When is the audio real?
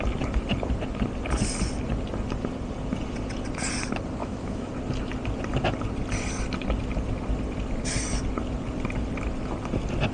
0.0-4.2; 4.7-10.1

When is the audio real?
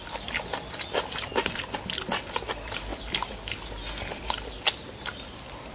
0.0-5.7